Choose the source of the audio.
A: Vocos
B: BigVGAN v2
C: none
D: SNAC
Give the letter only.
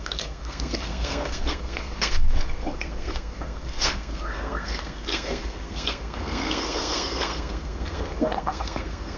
D